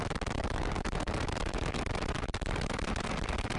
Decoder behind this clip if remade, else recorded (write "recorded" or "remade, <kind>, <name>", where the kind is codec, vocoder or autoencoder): recorded